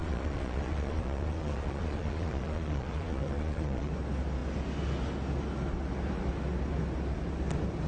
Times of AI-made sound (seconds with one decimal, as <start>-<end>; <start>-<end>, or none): 0.0-3.9